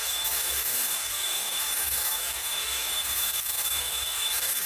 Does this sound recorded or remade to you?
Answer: remade